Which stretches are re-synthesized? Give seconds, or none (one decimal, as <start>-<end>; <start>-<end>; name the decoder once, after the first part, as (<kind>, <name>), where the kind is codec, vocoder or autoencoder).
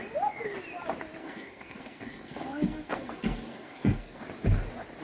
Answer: 1.2-4.2 (codec, SNAC)